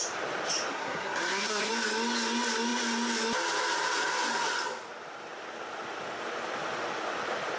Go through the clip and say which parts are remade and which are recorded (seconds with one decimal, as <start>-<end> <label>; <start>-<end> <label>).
0.0-0.7 recorded; 0.7-1.7 remade; 1.7-7.6 recorded